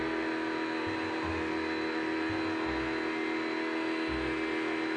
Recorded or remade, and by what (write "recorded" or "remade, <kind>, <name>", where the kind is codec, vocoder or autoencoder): recorded